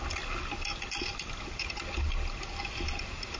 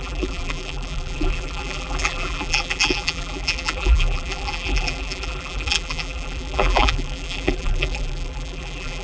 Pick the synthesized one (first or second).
second